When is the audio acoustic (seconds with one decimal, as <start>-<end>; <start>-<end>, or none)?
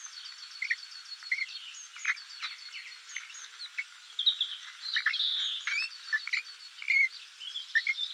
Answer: 0.0-4.5; 6.6-8.1